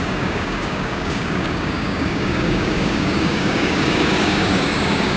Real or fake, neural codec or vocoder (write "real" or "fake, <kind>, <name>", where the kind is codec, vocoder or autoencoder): fake, codec, DAC